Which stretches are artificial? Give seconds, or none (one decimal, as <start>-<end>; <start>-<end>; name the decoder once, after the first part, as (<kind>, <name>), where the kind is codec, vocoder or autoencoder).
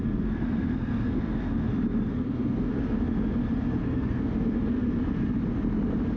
0.0-1.7 (codec, SNAC); 2.1-3.0; 3.8-5.0